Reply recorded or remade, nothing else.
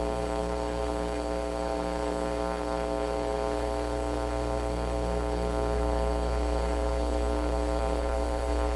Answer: remade